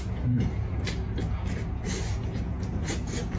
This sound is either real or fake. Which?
real